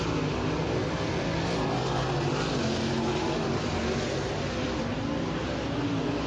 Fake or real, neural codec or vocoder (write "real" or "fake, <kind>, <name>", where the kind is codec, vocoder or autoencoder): real